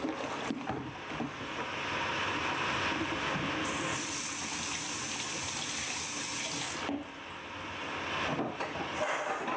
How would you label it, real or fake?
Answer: real